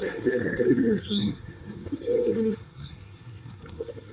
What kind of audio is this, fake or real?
fake